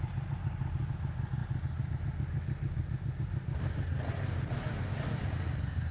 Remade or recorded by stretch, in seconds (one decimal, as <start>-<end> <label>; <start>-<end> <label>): 0.0-5.9 recorded